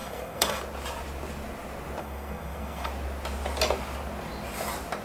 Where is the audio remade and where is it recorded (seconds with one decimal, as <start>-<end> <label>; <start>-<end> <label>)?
0.0-0.6 remade; 0.6-2.0 recorded; 2.0-2.9 remade; 2.9-5.0 recorded